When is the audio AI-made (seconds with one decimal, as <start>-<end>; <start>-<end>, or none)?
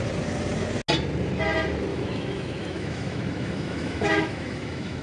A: 1.9-5.0